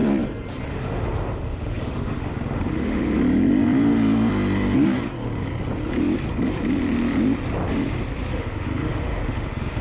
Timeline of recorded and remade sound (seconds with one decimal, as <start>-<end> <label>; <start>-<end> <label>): 0.0-0.7 recorded; 0.7-3.2 remade; 3.2-8.3 recorded; 8.3-9.8 remade